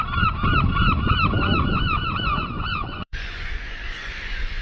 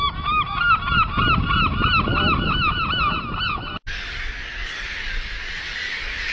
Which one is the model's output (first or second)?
first